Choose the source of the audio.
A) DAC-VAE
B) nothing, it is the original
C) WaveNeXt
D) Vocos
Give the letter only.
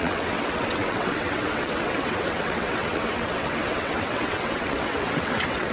C